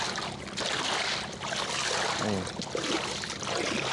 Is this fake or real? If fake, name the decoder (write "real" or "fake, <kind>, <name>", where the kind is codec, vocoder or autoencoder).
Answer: real